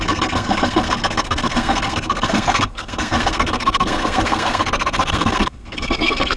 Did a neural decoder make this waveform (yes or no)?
yes